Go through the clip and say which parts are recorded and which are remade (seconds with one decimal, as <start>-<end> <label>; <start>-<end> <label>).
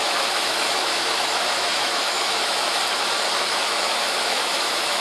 0.0-2.8 remade; 2.8-3.5 recorded; 3.5-5.0 remade